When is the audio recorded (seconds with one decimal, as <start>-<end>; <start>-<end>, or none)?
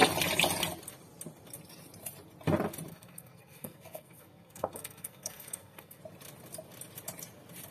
0.0-2.9; 6.0-7.7